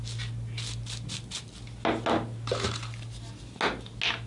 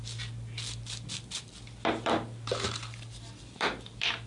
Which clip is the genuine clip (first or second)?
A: first